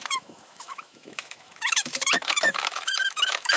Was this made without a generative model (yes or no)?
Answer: no